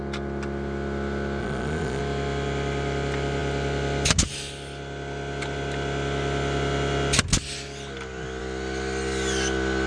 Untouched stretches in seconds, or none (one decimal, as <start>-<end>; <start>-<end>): 0.0-1.4; 2.0-9.9